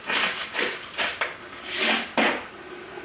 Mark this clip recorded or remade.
recorded